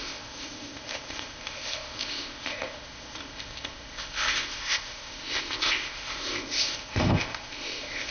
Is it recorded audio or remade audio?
remade